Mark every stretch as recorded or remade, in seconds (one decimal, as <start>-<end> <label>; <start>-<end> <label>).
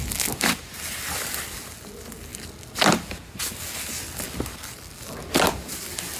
0.0-6.2 recorded